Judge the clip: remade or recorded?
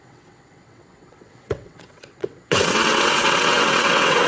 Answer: remade